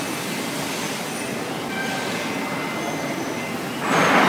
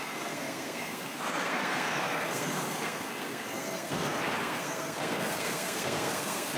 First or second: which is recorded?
first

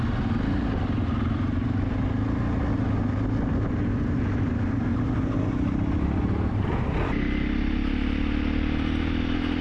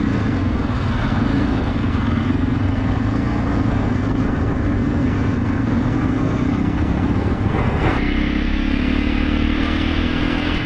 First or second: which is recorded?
first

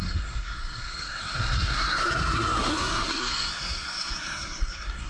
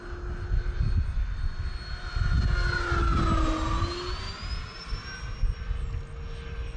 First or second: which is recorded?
second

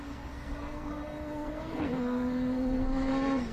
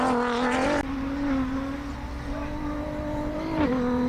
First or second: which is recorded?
second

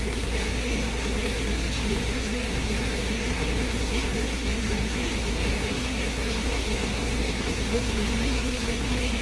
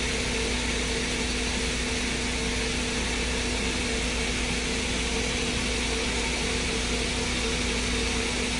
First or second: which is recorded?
second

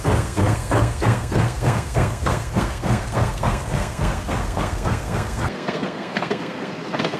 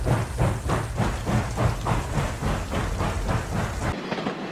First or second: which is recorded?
second